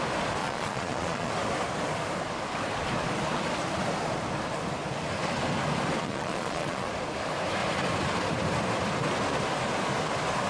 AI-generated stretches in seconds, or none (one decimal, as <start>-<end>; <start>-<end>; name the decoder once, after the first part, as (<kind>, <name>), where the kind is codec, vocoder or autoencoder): 0.4-1.3 (vocoder, Vocos); 6.0-6.9